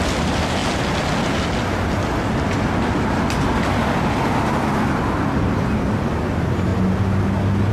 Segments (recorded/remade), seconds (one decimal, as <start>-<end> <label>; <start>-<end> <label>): 0.0-7.7 recorded